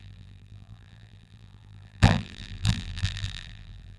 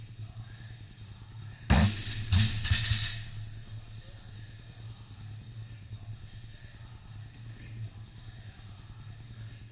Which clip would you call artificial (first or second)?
first